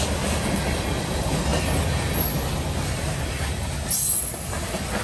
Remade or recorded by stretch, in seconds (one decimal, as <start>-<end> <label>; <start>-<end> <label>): 0.0-5.0 recorded